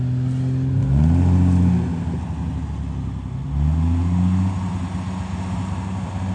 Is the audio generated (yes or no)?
no